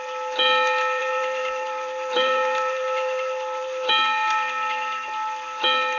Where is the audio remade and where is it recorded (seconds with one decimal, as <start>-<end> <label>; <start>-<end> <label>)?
0.0-1.0 recorded; 1.0-3.9 remade; 3.9-6.0 recorded